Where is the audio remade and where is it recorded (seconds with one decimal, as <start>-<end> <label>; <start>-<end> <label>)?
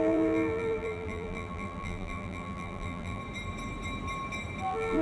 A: 0.0-3.2 remade; 3.2-4.6 recorded; 4.6-5.0 remade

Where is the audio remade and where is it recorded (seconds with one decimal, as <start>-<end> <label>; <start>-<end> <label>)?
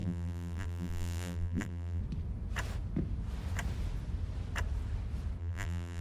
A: 0.0-2.0 remade; 2.0-5.4 recorded; 5.4-6.0 remade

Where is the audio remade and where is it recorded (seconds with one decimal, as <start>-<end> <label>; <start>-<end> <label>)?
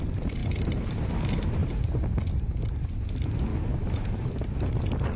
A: 0.0-0.4 recorded; 0.4-1.1 remade; 1.1-1.6 recorded; 1.6-2.2 remade; 2.2-3.5 recorded; 3.5-4.3 remade; 4.3-5.2 recorded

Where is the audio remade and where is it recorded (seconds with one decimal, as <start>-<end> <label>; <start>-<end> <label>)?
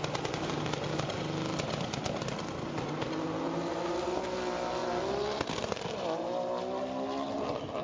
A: 0.0-7.8 recorded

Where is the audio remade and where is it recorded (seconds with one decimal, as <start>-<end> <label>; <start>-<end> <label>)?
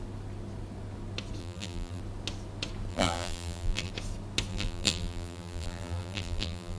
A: 0.0-1.4 recorded; 1.4-2.0 remade; 2.0-2.9 recorded; 2.9-3.9 remade; 3.9-4.5 recorded; 4.5-6.8 remade